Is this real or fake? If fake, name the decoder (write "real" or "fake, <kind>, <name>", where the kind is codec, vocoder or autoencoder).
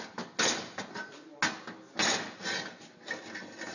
real